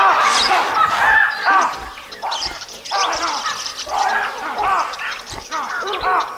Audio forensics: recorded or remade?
remade